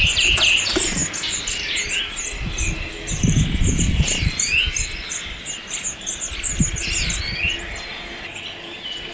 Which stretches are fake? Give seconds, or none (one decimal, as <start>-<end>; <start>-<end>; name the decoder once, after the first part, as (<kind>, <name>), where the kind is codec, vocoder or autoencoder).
none